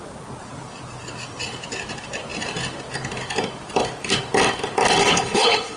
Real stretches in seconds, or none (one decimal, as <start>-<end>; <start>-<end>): 0.0-5.0